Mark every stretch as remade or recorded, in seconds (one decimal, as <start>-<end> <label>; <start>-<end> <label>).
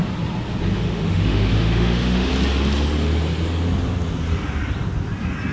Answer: 0.0-0.7 recorded; 0.7-2.3 remade; 2.3-5.5 recorded